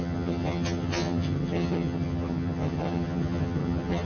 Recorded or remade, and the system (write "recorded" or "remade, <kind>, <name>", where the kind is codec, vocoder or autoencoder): remade, vocoder, HiFi-GAN